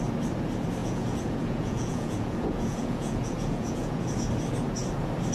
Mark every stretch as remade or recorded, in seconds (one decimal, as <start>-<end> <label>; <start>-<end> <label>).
0.0-0.8 recorded; 0.8-4.0 remade; 4.0-5.3 recorded